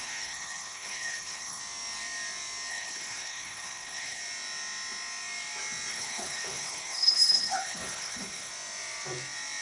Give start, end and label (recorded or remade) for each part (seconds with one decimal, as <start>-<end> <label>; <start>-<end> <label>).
0.0-1.6 remade; 1.6-2.7 recorded; 2.7-4.2 remade; 4.2-5.9 recorded; 5.9-8.5 remade; 8.5-9.6 recorded